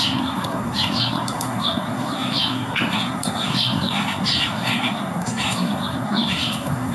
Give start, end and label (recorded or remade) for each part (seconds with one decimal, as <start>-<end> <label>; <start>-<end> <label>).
0.0-6.9 remade